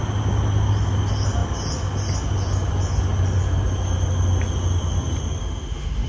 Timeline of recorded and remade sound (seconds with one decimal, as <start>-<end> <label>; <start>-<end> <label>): 0.0-5.4 recorded; 5.4-6.1 remade